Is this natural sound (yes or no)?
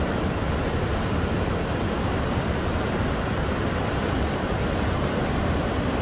no